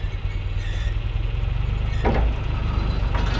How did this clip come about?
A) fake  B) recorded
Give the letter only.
B